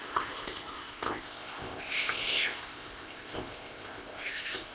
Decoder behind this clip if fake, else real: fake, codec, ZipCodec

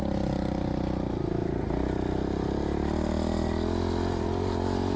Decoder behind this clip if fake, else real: real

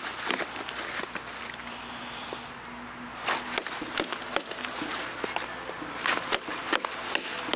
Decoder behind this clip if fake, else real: real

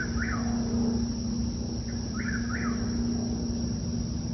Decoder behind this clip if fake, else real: real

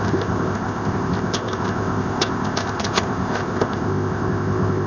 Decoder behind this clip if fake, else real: fake, codec, ZipCodec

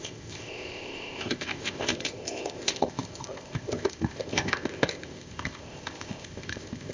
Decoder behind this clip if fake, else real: fake, codec, ZipCodec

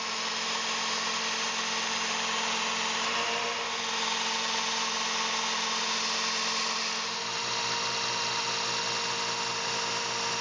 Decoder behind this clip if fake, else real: real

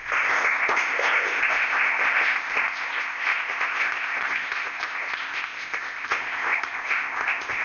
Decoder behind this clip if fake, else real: fake, codec, ZipCodec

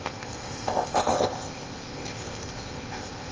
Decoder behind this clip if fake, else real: fake, codec, ZipCodec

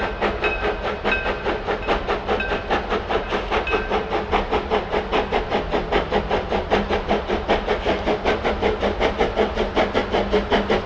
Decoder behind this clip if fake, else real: real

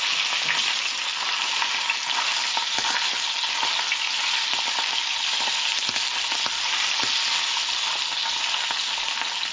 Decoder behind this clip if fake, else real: real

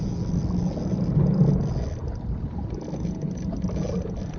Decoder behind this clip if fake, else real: real